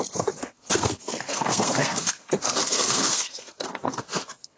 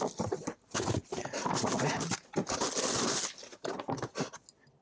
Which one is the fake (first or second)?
first